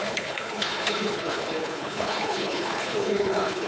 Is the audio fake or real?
fake